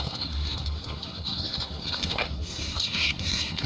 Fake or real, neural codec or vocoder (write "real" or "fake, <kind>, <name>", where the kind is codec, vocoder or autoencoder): fake, codec, SNAC